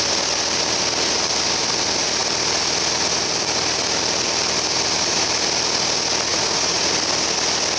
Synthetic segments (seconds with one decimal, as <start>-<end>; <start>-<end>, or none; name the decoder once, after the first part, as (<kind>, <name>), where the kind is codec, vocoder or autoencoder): 6.3-6.9 (vocoder, Vocos)